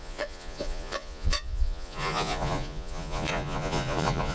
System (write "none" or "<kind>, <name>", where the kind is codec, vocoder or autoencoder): vocoder, Vocos